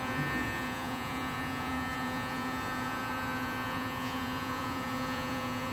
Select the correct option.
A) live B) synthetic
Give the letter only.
B